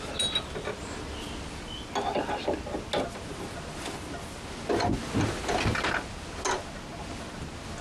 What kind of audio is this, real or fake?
real